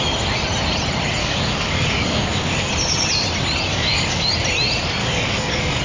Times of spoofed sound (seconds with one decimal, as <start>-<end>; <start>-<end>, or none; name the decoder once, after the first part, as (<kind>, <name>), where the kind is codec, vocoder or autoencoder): 1.2-2.7 (codec, DAC); 3.7-4.3; 5.0-5.8